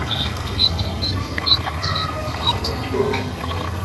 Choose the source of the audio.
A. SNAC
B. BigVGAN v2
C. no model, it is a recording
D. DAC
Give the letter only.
A